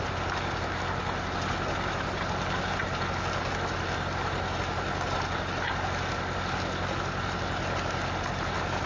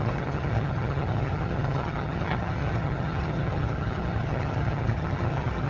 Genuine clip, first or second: first